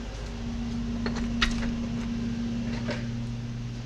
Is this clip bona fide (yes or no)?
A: yes